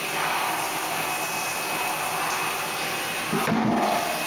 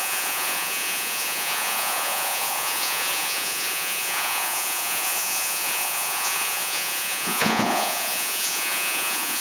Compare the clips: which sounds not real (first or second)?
second